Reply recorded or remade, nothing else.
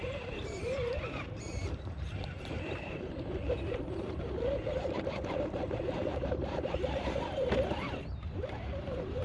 remade